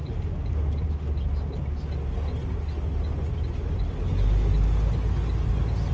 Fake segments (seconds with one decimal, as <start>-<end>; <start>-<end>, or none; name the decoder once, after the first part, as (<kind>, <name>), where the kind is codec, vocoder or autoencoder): none